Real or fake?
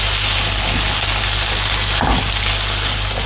real